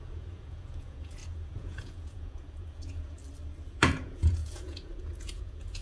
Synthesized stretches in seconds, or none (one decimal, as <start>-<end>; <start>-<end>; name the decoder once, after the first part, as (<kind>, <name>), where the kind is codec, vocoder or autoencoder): 0.0-3.2 (vocoder, Vocos); 3.7-5.8